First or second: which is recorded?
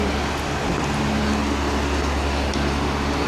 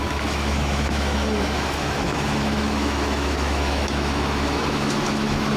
first